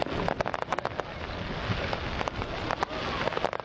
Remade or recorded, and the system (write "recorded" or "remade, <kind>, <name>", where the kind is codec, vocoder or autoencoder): recorded